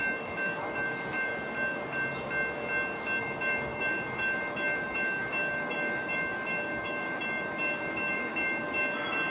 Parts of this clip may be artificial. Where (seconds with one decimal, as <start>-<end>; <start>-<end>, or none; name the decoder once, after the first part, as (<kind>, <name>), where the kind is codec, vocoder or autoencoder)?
0.0-1.3 (autoencoder, DAC-VAE); 3.2-9.3